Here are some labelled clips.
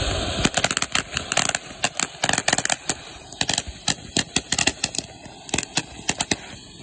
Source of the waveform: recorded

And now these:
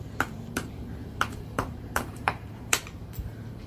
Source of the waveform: remade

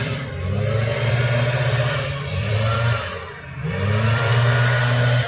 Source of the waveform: remade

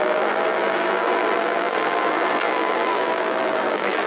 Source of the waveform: remade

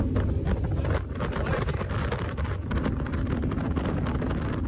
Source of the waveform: recorded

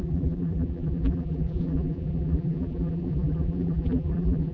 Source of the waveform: remade